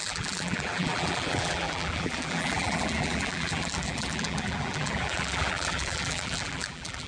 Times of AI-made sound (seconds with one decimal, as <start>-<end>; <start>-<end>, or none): 0.0-7.1